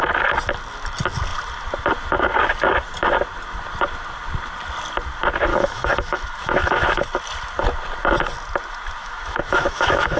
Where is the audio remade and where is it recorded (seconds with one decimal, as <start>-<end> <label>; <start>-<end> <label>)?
0.0-5.5 recorded; 5.5-7.0 remade; 7.0-9.0 recorded; 9.0-10.2 remade